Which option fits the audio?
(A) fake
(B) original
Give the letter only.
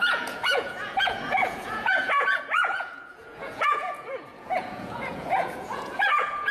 A